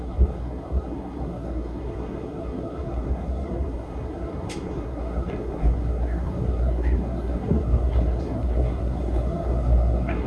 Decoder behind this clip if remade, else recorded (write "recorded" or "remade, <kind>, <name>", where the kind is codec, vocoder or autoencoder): remade, codec, SNAC